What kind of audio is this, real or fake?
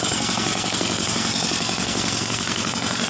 fake